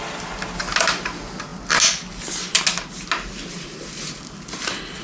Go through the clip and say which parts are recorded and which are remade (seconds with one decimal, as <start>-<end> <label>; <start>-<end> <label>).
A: 0.0-5.0 recorded